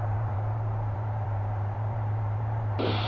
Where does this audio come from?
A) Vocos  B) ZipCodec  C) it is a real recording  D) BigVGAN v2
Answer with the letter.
D